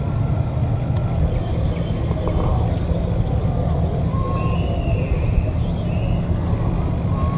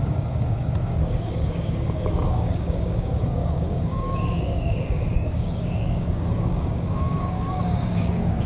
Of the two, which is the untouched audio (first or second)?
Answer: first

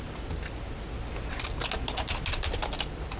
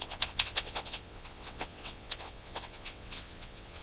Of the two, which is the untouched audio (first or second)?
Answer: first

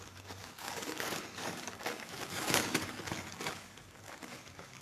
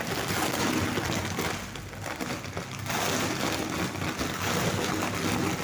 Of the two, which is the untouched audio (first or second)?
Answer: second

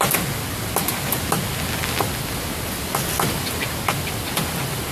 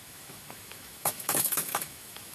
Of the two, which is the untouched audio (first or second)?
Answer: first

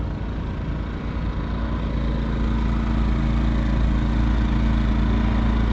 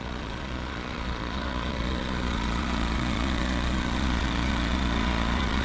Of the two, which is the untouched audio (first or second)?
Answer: first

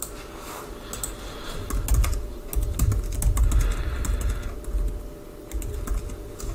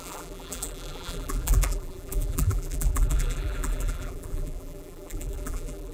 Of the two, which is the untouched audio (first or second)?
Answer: first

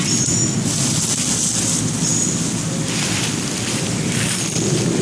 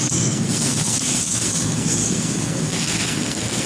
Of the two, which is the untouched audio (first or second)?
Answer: first